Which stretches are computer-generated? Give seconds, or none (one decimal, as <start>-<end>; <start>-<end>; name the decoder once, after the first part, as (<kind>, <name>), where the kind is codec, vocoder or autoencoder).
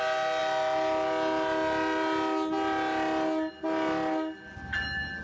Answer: none